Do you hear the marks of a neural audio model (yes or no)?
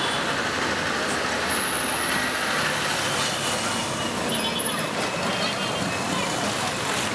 no